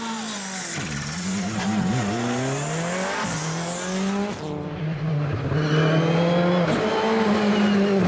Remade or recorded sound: recorded